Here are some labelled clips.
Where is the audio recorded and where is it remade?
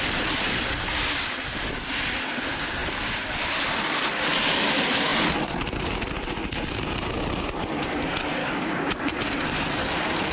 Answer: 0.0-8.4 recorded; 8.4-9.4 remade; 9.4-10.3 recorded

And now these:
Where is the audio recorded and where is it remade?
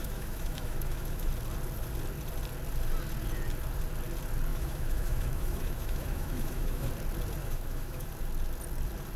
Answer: 0.0-1.3 remade; 1.3-4.5 recorded; 4.5-6.9 remade; 6.9-7.4 recorded; 7.4-8.1 remade; 8.1-9.2 recorded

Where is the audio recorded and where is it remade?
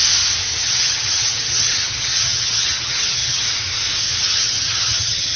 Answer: 0.0-0.6 recorded; 0.6-3.4 remade; 3.4-4.2 recorded; 4.2-5.4 remade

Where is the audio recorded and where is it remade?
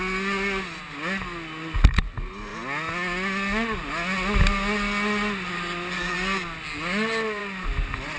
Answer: 0.0-8.2 recorded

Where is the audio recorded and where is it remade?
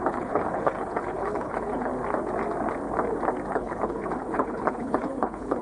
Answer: 0.0-1.9 remade; 1.9-3.5 recorded; 3.5-5.6 remade